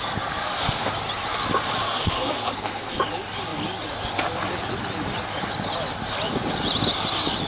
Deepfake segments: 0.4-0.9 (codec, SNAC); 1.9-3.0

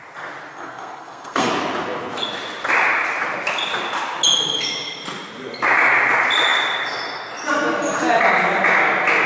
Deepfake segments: 0.5-1.5 (codec, SNAC)

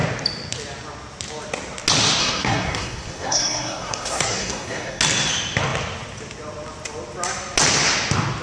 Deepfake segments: 2.2-5.0 (codec, SNAC)

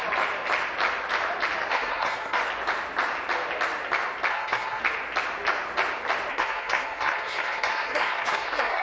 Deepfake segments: 1.7-2.4 (codec, SNAC); 4.3-4.8; 6.3-8.8